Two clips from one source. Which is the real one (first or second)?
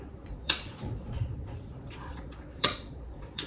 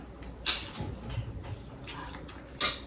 second